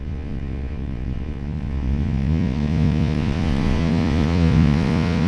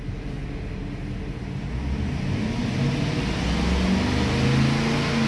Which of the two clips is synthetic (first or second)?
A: first